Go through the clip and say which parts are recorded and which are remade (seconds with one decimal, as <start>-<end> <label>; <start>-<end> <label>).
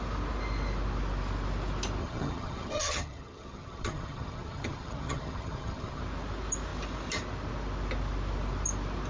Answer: 0.0-2.0 recorded; 2.0-6.0 remade; 6.0-9.1 recorded